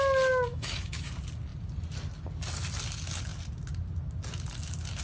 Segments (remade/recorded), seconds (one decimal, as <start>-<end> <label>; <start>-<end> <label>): 0.0-0.5 recorded; 0.5-1.1 remade; 1.1-5.0 recorded